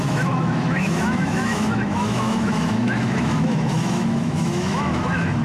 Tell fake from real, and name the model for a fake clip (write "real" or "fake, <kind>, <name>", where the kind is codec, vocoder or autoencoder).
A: fake, autoencoder, DAC-VAE